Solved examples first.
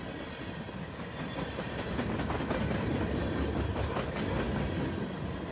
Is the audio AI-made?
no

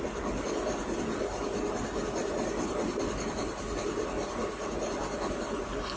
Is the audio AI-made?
no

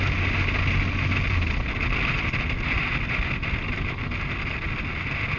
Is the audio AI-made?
no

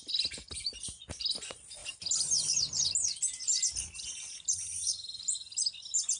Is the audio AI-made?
no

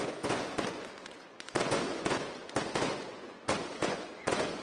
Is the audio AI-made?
yes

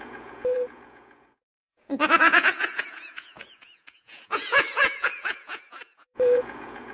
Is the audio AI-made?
yes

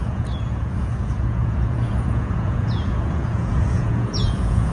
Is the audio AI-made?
yes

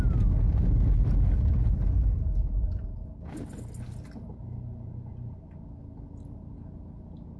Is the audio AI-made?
no